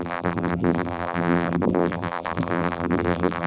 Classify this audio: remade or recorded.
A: remade